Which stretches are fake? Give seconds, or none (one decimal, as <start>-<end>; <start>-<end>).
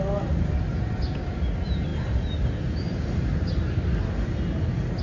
none